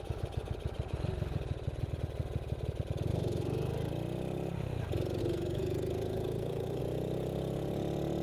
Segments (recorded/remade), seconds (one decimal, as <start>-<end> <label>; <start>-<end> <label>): 0.0-3.1 recorded; 3.1-3.9 remade; 3.9-5.2 recorded; 5.2-6.8 remade; 6.8-8.2 recorded